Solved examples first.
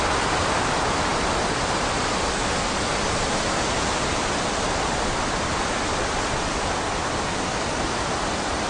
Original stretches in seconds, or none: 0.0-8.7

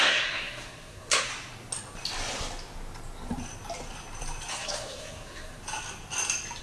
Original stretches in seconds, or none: 1.3-4.5; 5.6-6.6

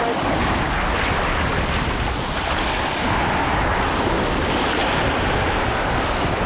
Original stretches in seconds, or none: 0.0-6.5